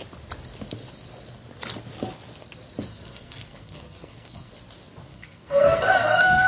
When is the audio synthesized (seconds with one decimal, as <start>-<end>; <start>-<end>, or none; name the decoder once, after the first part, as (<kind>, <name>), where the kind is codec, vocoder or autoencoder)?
2.9-4.5 (codec, SNAC); 5.1-6.5